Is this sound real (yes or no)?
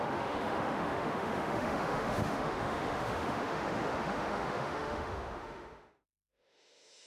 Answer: no